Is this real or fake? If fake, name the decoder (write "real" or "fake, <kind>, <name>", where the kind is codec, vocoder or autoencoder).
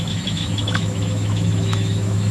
fake, autoencoder, DAC-VAE